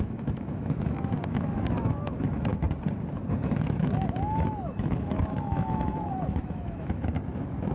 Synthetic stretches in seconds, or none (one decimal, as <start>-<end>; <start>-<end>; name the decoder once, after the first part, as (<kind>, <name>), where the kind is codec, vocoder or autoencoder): 0.0-2.5 (autoencoder, DAC-VAE); 3.1-7.7